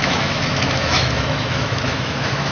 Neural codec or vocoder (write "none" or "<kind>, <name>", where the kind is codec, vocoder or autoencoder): autoencoder, DAC-VAE